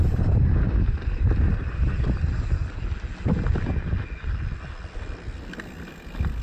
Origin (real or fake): real